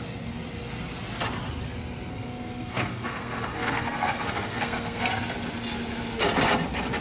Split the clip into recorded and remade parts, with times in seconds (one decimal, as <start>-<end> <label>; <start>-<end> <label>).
0.0-2.1 recorded; 2.1-5.1 remade; 5.1-7.0 recorded